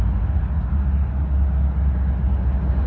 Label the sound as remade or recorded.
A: recorded